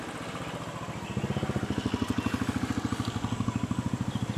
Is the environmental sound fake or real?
real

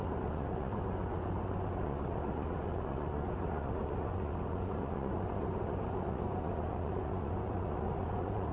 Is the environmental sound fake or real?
fake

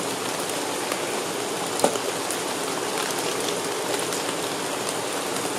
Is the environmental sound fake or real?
real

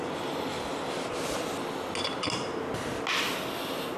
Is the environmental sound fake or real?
real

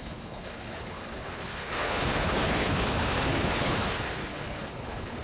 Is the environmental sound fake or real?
fake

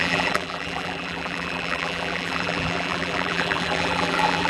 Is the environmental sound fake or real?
fake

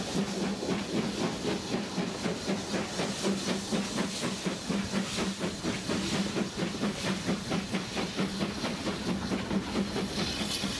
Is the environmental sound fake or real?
real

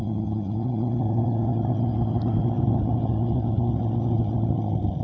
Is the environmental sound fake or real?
real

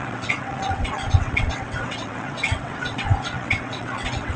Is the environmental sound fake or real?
fake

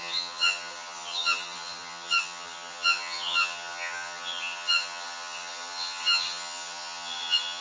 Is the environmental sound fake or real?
fake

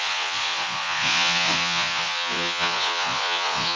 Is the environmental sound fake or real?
fake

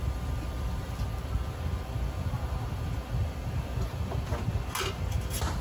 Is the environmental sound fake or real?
real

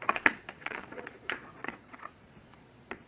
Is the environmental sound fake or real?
fake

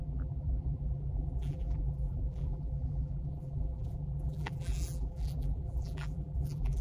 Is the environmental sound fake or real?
fake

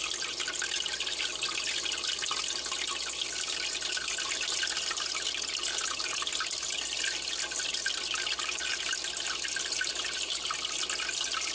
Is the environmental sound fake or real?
real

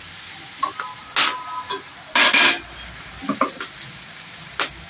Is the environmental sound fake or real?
real